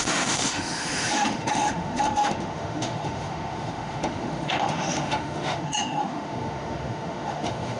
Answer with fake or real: fake